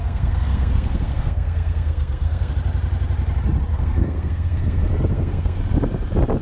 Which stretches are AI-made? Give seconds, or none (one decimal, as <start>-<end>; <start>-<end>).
0.0-2.5; 3.7-5.6